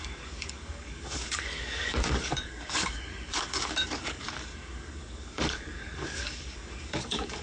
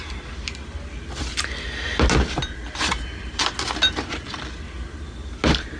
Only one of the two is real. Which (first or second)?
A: second